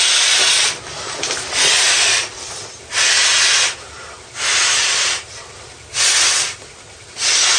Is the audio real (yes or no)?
yes